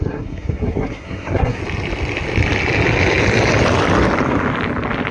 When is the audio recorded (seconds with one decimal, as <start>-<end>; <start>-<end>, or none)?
1.6-5.1